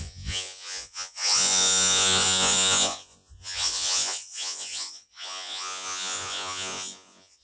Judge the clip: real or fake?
fake